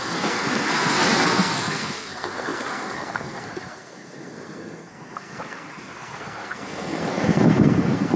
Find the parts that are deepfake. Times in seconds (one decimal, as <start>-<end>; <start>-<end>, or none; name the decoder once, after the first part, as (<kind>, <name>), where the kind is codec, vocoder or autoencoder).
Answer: 0.0-8.2 (codec, SNAC)